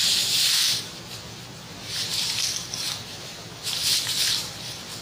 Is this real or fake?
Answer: fake